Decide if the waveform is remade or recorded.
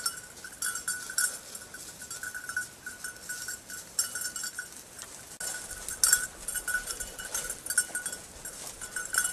recorded